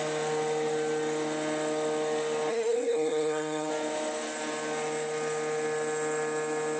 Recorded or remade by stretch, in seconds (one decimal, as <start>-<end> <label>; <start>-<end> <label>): 0.0-2.5 recorded; 2.5-3.7 remade; 3.7-6.8 recorded